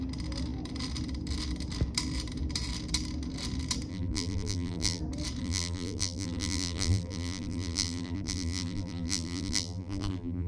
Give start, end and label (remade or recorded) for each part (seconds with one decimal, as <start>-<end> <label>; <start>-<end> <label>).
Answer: 0.0-3.9 recorded; 3.9-5.0 remade; 5.0-5.4 recorded; 5.4-10.5 remade